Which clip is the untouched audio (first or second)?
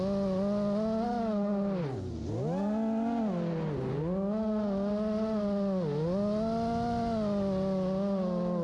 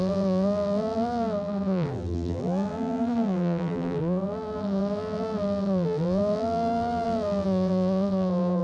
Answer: first